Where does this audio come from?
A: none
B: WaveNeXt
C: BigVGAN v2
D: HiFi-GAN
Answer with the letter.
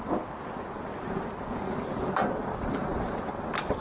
A